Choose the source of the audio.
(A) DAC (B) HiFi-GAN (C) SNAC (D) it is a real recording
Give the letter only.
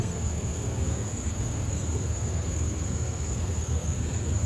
C